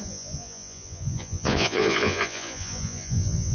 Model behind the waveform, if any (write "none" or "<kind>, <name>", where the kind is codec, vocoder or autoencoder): vocoder, Vocos